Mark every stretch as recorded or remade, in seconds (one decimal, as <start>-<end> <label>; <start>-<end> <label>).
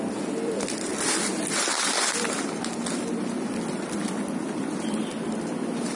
0.0-6.0 recorded